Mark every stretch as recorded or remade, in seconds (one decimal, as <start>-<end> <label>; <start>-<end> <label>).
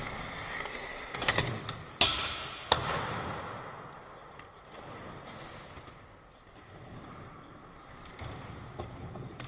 0.0-0.9 recorded; 0.9-1.5 remade; 1.5-9.5 recorded